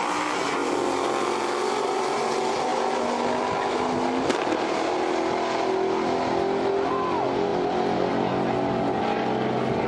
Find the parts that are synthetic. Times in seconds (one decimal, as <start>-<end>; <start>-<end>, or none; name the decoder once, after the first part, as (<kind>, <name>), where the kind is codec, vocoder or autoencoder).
none